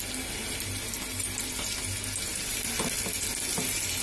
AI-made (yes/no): no